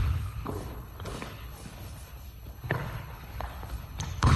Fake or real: fake